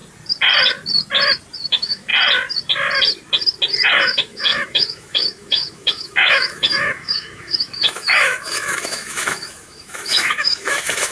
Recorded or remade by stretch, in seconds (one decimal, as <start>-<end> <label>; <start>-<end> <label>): 0.0-1.7 recorded; 1.7-2.1 remade; 2.1-3.9 recorded; 3.9-11.1 remade

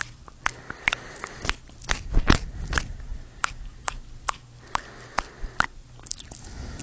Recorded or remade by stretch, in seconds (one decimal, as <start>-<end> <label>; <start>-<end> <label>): 0.0-6.8 recorded

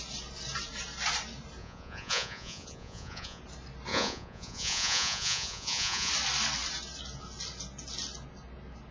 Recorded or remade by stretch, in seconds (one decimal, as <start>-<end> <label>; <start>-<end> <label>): 0.0-1.6 recorded; 1.6-3.4 remade; 3.4-3.9 recorded; 3.9-6.1 remade; 6.1-8.9 recorded